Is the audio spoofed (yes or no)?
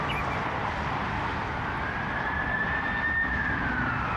yes